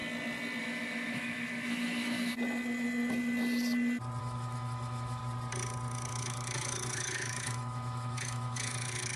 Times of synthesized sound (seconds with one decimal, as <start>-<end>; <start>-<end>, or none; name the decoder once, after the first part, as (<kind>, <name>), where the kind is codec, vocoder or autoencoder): 0.6-2.3 (autoencoder, DAC-VAE); 4.2-5.2; 6.1-9.2